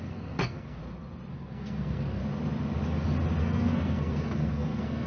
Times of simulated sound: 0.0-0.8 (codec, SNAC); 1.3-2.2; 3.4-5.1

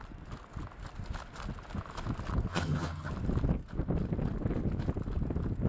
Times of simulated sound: 2.5-3.1 (vocoder, HiFi-GAN)

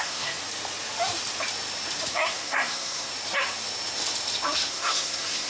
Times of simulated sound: 0.0-0.4 (codec, SNAC); 2.1-3.1; 4.7-5.5

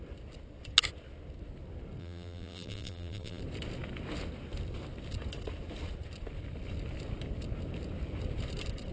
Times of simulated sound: 2.0-3.4 (vocoder, BigVGAN v2)

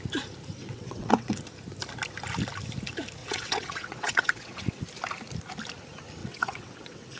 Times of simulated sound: 0.6-1.4 (vocoder, WaveNeXt); 3.2-4.8; 6.2-7.2

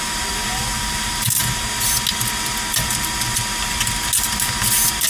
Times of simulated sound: none

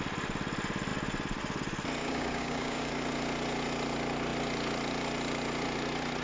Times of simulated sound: 2.0-2.9 (codec, DAC)